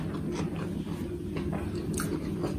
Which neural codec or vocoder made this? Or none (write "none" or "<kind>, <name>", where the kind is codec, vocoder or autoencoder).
none